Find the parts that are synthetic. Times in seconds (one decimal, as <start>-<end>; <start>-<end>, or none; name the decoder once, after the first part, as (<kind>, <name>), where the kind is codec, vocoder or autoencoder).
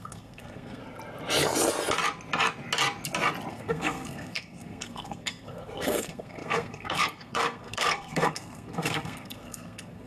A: 0.0-0.8 (codec, SNAC); 3.5-10.1